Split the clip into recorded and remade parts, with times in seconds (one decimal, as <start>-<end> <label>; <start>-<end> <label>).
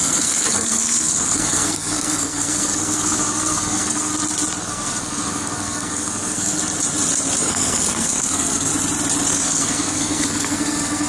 0.0-4.1 remade; 4.1-4.6 recorded; 4.6-6.6 remade; 6.6-7.4 recorded; 7.4-8.7 remade; 8.7-9.3 recorded; 9.3-11.1 remade